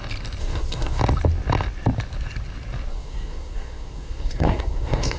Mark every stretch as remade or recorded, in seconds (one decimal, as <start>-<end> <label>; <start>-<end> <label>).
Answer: 0.0-0.4 recorded; 0.4-1.0 remade; 1.0-2.9 recorded; 2.9-5.2 remade